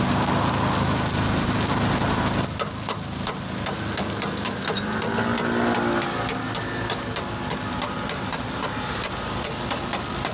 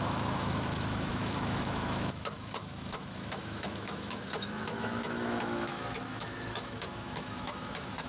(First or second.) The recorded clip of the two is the first